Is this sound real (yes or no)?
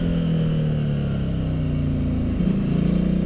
yes